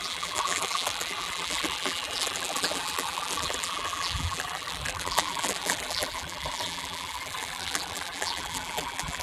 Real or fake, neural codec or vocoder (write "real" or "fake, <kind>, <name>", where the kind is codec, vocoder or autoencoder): fake, vocoder, BigVGAN v2